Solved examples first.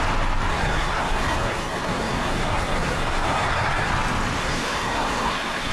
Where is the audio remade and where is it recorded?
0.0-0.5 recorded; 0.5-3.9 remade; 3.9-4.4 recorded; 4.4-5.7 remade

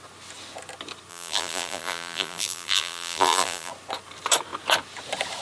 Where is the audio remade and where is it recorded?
0.0-1.1 recorded; 1.1-3.7 remade; 3.7-5.4 recorded

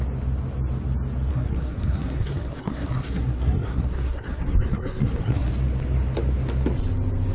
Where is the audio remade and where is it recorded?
0.0-1.3 recorded; 1.3-5.5 remade; 5.5-7.3 recorded

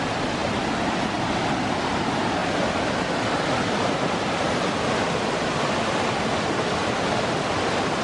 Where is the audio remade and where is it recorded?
0.0-8.0 recorded